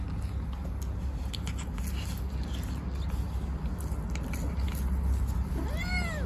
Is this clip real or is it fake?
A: real